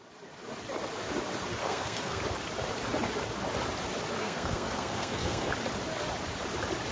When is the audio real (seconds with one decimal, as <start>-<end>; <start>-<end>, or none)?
0.0-1.6; 2.2-4.2; 5.5-6.9